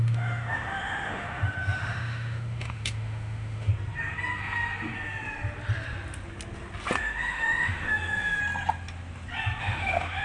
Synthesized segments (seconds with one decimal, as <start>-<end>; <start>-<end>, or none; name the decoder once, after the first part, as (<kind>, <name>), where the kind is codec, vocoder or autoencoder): 0.0-3.7 (autoencoder, DAC-VAE); 7.0-8.4; 9.6-10.2